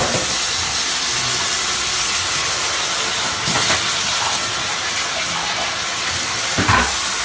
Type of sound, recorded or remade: recorded